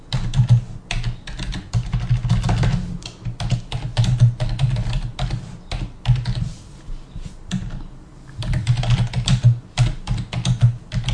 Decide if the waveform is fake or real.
real